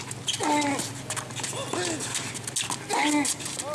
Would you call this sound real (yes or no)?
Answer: yes